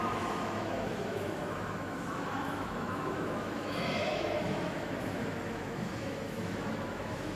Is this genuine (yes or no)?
no